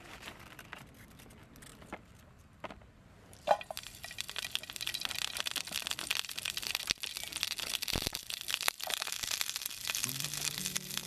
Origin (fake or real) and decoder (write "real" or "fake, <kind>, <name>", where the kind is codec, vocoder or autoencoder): fake, vocoder, BigVGAN v2